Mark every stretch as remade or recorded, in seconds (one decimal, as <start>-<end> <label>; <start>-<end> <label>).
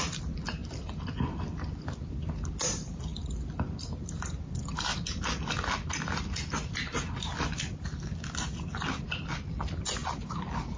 0.0-10.8 recorded